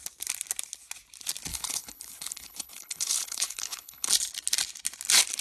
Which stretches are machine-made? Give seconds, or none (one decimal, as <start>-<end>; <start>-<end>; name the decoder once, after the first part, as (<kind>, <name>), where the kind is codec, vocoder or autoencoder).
1.5-4.1 (codec, HILCodec)